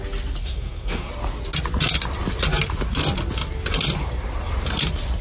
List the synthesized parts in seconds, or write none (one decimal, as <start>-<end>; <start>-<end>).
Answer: 0.4-1.1